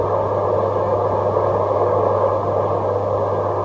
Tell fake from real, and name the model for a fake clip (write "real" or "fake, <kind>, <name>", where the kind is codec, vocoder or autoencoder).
real